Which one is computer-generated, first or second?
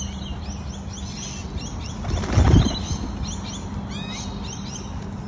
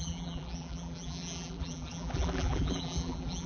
second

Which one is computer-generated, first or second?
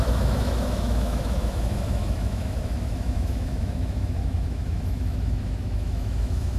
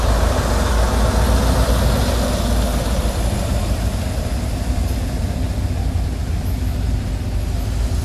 first